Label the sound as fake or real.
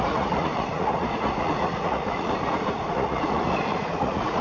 fake